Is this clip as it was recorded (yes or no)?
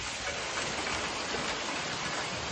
yes